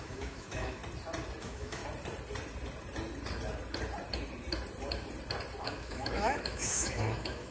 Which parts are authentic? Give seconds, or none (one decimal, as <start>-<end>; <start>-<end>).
0.8-1.4; 1.8-5.6